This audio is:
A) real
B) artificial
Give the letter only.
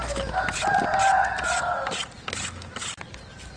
A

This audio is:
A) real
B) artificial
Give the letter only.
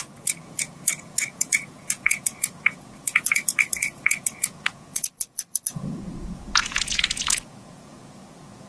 B